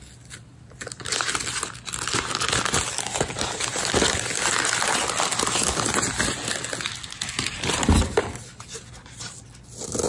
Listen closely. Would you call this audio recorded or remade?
recorded